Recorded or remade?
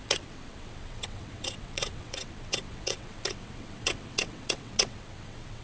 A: remade